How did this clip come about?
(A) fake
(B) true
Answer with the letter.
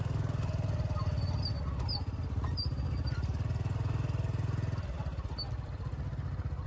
B